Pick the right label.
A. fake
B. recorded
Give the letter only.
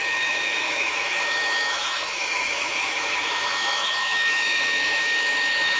A